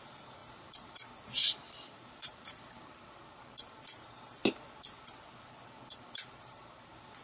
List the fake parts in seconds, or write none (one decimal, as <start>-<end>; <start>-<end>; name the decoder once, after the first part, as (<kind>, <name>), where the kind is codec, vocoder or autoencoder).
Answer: 0.0-4.4 (vocoder, BigVGAN v2); 5.5-7.2